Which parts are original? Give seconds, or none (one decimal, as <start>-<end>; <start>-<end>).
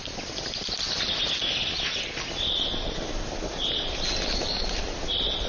0.0-5.5